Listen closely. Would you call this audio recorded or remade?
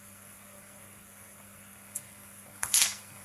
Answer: remade